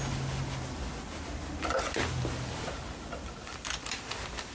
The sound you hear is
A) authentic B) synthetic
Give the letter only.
A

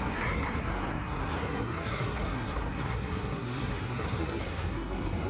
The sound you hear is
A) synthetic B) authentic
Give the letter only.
A